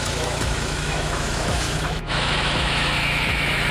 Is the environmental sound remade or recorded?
remade